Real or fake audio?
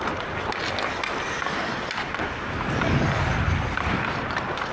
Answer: real